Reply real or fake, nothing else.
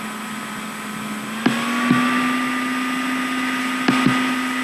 real